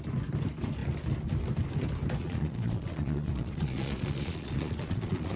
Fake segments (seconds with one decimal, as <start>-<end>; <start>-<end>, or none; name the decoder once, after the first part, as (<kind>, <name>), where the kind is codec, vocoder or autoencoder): 2.2-5.4 (vocoder, Vocos)